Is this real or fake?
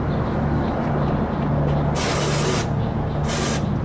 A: real